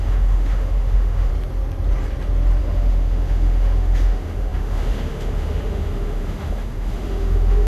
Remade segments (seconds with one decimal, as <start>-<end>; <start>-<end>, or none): 0.0-1.3; 2.6-7.7